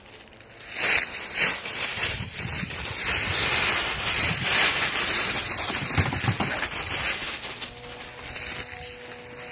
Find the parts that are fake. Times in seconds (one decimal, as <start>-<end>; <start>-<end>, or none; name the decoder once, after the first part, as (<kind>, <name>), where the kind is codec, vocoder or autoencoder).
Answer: none